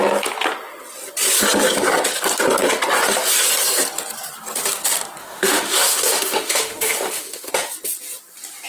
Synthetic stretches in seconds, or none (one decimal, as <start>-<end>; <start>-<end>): 5.2-7.5

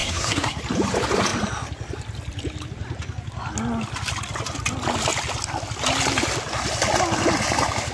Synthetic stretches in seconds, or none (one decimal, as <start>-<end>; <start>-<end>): 0.0-0.6

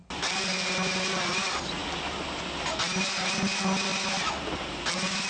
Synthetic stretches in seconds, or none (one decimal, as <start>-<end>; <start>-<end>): none

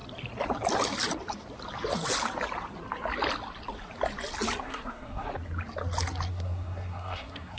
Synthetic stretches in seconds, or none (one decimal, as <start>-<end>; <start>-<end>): 4.6-5.3; 6.3-7.6

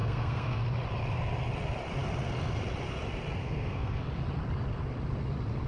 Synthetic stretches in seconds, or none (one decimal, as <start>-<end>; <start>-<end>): 0.0-0.6; 3.4-4.0

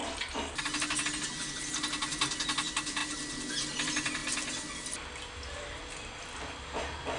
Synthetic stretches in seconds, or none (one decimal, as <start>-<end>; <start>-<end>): none

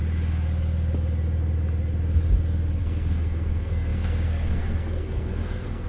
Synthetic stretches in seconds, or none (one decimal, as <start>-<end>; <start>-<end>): 2.8-5.9